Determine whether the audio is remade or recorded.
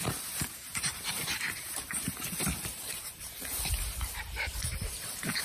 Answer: remade